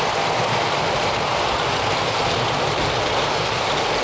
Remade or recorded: recorded